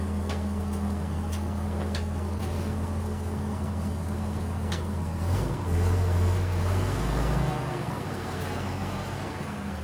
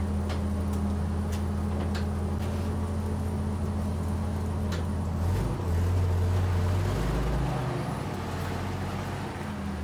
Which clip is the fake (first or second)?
first